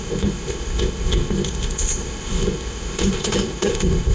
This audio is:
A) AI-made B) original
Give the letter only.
A